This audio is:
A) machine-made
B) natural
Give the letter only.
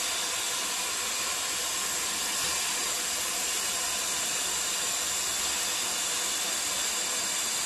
B